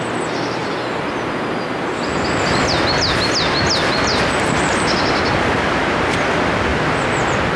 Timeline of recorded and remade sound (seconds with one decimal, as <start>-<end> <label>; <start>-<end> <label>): 0.0-7.6 recorded